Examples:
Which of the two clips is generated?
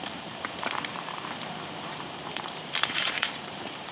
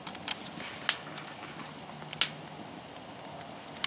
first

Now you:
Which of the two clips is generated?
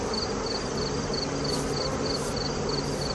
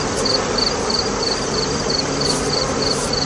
second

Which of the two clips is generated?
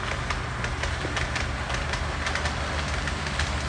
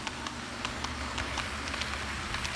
second